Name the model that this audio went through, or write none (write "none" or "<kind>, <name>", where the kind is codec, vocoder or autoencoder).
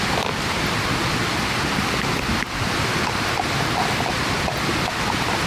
none